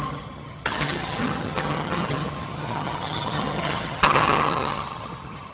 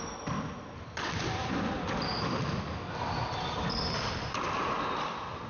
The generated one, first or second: first